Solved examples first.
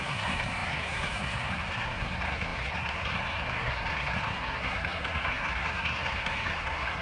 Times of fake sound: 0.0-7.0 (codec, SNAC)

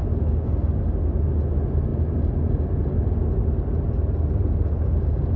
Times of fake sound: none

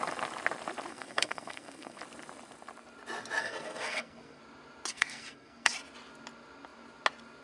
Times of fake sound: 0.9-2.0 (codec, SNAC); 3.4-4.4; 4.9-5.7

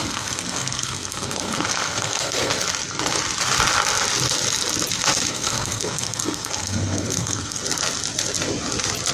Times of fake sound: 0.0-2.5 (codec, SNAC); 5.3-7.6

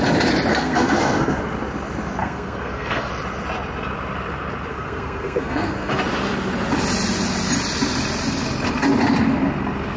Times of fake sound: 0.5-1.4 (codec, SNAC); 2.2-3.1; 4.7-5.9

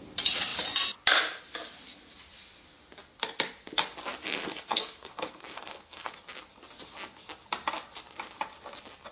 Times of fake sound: 4.2-6.1 (codec, SNAC)